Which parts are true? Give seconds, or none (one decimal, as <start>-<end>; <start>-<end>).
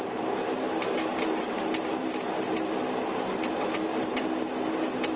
0.0-5.2